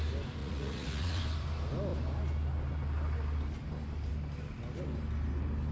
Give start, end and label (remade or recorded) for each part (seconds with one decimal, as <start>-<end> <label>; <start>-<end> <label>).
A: 0.0-0.4 recorded; 0.4-1.2 remade; 1.2-5.7 recorded